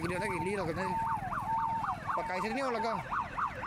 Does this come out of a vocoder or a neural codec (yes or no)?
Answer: no